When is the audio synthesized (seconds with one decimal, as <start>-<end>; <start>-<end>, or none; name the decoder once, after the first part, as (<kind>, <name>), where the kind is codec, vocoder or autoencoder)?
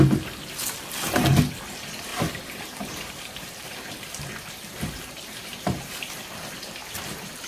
2.1-5.9 (vocoder, BigVGAN v2)